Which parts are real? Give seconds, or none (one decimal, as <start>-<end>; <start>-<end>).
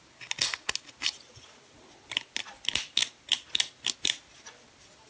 0.0-5.1